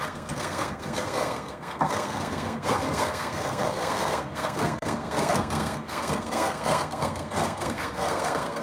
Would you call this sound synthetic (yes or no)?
yes